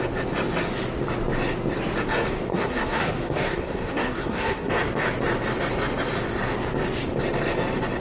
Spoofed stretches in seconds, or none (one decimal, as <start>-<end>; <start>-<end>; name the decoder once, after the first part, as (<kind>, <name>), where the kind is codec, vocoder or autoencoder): 2.5-4.7 (codec, SNAC)